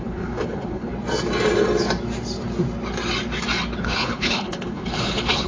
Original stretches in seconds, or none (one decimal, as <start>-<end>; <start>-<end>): 0.9-3.8